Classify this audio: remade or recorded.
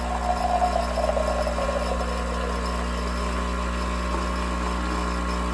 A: recorded